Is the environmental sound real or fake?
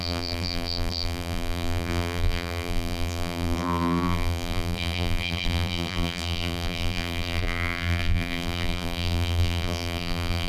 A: fake